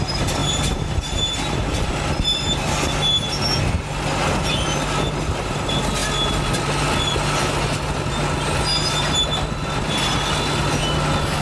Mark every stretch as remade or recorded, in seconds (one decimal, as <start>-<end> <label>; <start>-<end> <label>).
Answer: 0.0-11.4 recorded